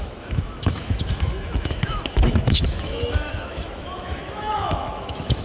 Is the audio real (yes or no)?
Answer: no